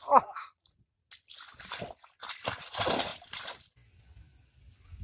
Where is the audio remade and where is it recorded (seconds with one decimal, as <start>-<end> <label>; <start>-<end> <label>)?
0.0-1.0 remade; 1.0-5.0 recorded